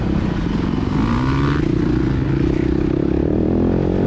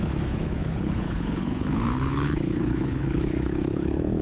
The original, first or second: first